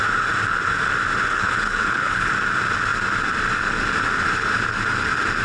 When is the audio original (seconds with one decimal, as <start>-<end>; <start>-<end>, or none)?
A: 0.0-1.3; 2.3-5.4